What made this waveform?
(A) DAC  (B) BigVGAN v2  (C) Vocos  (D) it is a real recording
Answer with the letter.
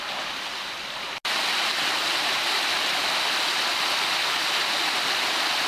D